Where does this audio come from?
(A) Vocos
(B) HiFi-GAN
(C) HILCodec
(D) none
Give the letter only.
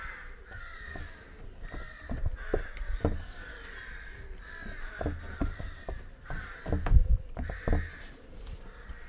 D